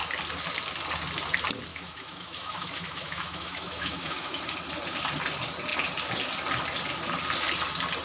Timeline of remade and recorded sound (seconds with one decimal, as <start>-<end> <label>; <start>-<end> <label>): 0.0-1.7 recorded; 1.7-4.4 remade; 4.4-8.0 recorded